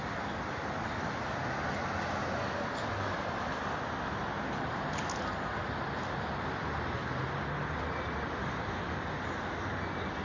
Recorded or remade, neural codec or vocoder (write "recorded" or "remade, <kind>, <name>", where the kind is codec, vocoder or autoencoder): recorded